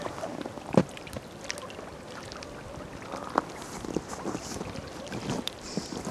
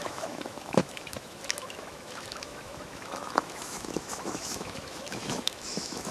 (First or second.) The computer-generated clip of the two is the second